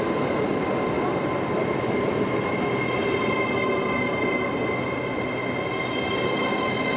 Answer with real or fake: real